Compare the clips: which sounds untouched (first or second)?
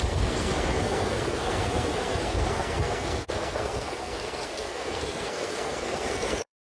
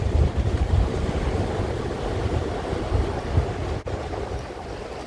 second